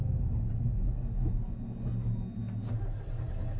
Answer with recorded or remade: recorded